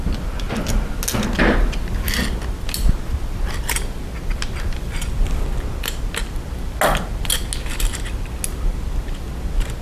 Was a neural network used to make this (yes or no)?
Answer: no